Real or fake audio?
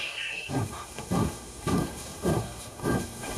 fake